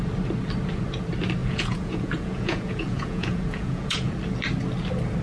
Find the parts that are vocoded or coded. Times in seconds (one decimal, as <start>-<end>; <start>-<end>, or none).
1.4-4.1